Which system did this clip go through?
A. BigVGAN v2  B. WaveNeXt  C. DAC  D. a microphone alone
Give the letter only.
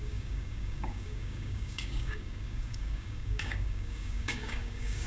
C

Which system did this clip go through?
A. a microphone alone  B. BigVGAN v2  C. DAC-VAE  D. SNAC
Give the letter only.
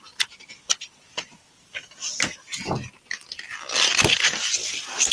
A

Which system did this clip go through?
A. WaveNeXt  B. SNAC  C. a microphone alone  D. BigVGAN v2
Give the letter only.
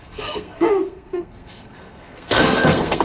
B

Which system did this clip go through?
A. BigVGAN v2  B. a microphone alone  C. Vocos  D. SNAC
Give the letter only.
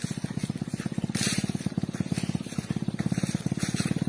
B